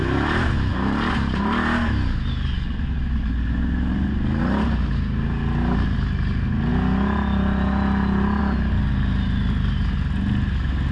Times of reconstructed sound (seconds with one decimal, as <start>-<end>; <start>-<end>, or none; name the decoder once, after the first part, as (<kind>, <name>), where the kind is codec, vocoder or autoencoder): none